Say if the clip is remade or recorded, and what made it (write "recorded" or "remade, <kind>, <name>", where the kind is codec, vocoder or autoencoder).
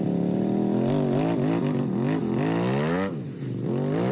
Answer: recorded